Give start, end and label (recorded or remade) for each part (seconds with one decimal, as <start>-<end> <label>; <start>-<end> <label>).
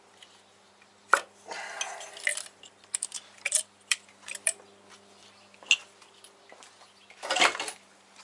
0.0-2.3 recorded; 2.3-5.4 remade; 5.4-8.2 recorded